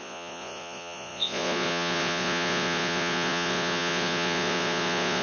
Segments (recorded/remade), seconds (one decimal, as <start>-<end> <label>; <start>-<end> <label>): 0.0-5.2 remade